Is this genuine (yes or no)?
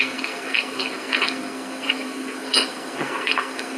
no